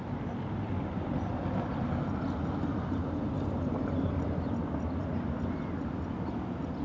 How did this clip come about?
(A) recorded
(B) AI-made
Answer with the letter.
A